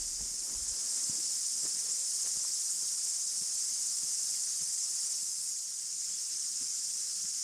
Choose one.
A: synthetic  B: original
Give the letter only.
B